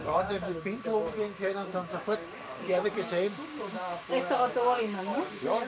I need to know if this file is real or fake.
fake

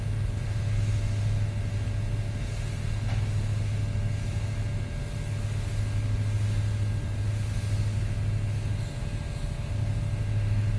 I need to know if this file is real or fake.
real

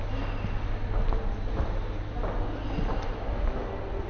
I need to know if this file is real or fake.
real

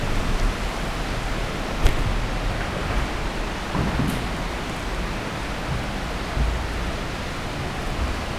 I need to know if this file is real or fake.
real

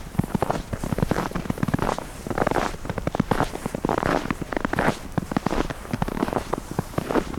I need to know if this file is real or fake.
fake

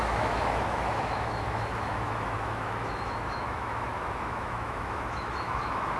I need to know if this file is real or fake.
fake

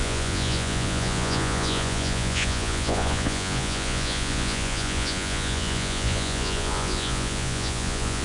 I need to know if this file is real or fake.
fake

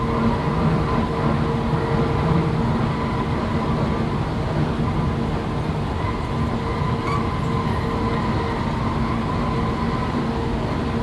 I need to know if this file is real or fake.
real